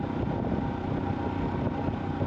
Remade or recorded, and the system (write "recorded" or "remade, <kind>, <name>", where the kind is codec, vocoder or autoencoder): recorded